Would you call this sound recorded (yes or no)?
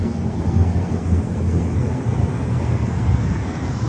no